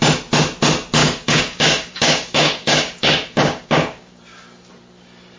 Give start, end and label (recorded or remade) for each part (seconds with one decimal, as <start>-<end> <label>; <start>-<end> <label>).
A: 0.0-1.0 recorded; 1.0-4.2 remade; 4.2-5.4 recorded